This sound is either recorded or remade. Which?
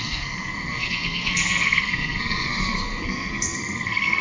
remade